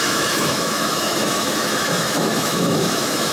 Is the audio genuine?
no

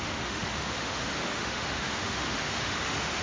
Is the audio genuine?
no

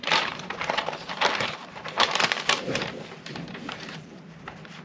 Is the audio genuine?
no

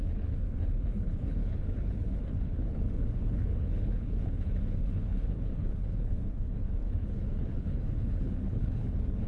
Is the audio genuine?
no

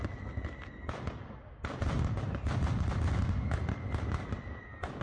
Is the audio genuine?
yes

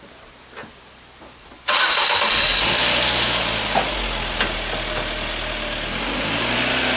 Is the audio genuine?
yes